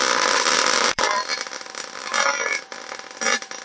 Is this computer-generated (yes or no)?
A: yes